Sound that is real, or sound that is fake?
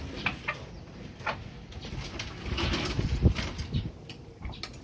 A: real